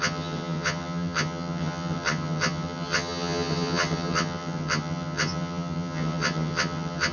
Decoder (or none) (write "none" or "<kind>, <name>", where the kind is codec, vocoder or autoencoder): vocoder, HiFi-GAN